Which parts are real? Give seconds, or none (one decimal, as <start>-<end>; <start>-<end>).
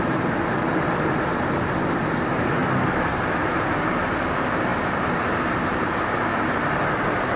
1.3-2.1; 2.6-3.5